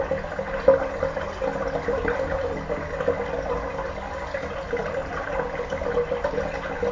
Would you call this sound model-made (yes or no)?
no